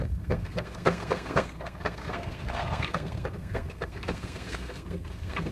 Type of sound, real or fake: fake